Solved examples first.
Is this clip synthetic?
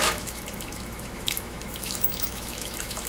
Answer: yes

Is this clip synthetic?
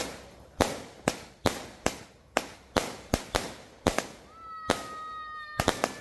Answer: no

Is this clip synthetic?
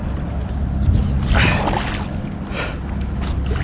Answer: no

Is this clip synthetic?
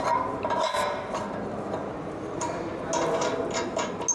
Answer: no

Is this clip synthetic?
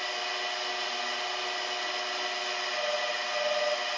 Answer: no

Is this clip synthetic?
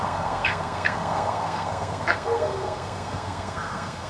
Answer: yes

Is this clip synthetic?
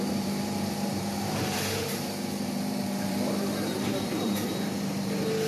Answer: yes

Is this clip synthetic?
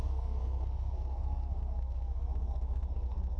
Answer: yes